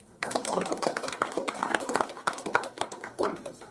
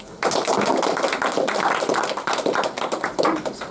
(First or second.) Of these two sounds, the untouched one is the second